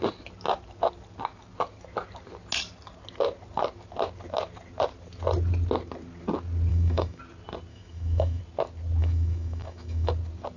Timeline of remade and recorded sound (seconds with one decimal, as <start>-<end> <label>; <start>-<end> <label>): 0.0-6.7 recorded; 6.7-7.2 remade; 7.2-7.7 recorded; 7.7-8.4 remade; 8.4-9.0 recorded; 9.0-10.1 remade; 10.1-10.6 recorded